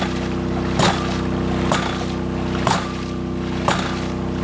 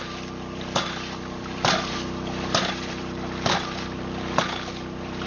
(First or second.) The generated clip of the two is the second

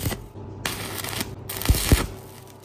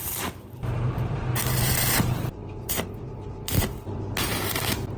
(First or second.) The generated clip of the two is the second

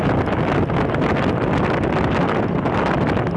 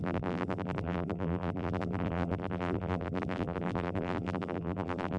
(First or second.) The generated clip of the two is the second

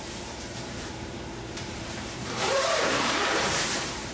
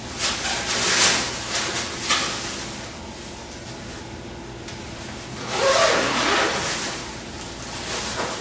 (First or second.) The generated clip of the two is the first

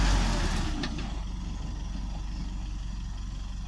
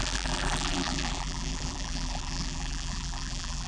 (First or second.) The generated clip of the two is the second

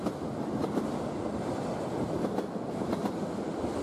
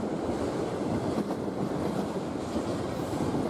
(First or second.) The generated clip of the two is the second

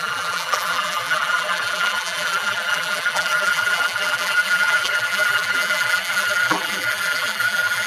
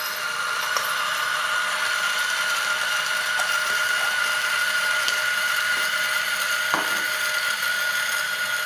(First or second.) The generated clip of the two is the first